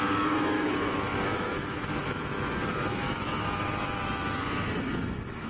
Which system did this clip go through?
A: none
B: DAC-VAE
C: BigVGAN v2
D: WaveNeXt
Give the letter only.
B